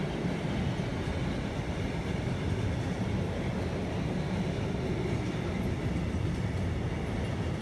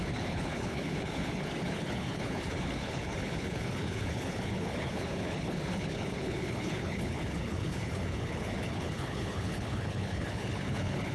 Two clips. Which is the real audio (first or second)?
first